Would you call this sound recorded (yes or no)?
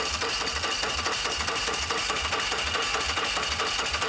yes